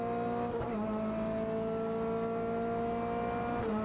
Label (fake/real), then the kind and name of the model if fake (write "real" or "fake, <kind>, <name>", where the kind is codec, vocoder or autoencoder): real